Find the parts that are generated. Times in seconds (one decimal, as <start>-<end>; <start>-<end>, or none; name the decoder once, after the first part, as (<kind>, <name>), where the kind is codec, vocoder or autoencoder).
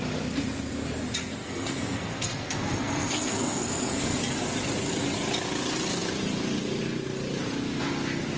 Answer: 1.4-4.2 (codec, SNAC)